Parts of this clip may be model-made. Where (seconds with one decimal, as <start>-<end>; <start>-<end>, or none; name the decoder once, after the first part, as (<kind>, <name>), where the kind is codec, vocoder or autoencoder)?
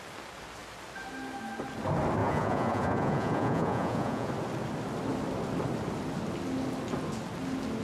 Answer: 2.2-4.3 (vocoder, Vocos)